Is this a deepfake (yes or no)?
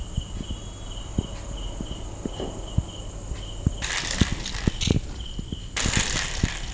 no